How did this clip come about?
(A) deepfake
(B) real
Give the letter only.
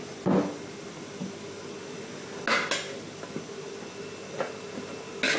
B